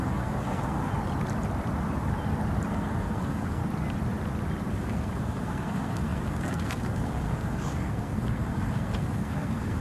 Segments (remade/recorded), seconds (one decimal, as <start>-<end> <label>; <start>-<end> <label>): 0.0-0.9 remade; 0.9-2.7 recorded; 2.7-3.6 remade; 3.6-4.7 recorded; 4.7-9.8 remade